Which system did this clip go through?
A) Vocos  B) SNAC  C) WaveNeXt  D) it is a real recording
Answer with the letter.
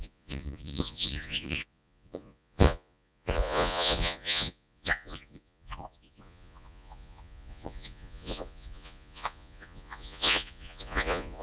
A